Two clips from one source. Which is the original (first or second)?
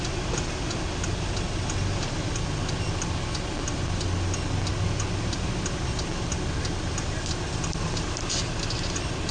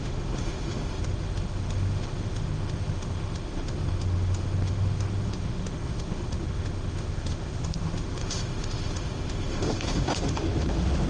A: first